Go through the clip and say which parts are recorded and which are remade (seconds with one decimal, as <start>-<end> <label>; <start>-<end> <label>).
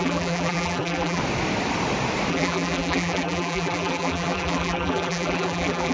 0.0-1.2 remade; 1.2-2.3 recorded; 2.3-5.9 remade